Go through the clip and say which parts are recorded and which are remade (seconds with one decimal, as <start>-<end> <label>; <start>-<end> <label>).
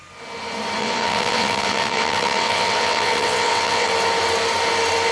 0.0-0.8 recorded; 0.8-3.9 remade; 3.9-5.1 recorded